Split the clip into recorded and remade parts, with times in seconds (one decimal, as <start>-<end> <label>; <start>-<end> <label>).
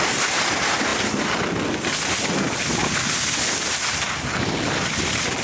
0.0-5.4 recorded